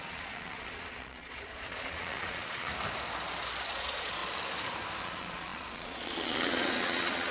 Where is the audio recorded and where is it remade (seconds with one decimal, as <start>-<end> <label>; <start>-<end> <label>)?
0.0-2.7 remade; 2.7-3.7 recorded; 3.7-4.2 remade; 4.2-5.0 recorded; 5.0-7.3 remade